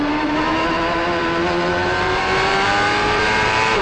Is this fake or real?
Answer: fake